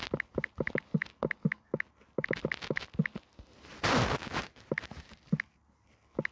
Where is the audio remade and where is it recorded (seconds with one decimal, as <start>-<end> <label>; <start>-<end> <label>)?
0.0-6.3 recorded